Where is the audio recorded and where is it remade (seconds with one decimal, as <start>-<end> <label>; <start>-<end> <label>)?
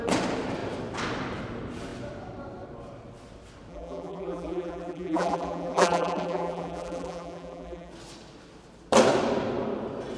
0.0-3.7 recorded; 3.7-7.9 remade; 7.9-10.2 recorded